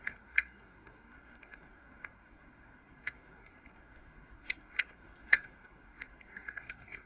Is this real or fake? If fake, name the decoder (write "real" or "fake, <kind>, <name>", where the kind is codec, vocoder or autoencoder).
fake, codec, SNAC